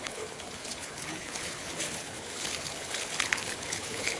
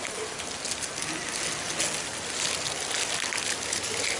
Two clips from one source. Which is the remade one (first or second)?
first